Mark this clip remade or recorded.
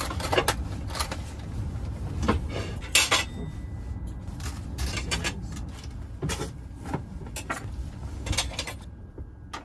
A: recorded